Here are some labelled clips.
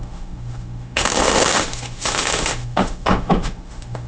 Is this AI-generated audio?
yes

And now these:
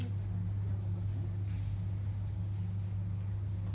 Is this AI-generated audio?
no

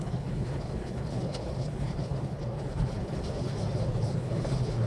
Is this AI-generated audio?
yes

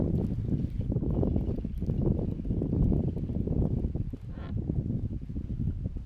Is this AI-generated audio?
no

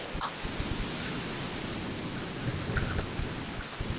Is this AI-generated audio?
no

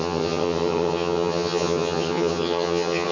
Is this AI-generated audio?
yes